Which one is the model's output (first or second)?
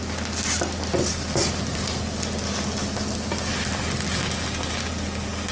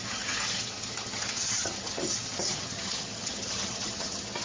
second